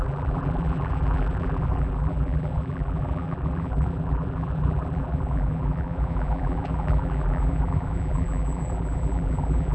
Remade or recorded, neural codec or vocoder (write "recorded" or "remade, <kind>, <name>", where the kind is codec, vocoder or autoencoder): remade, vocoder, BigVGAN v2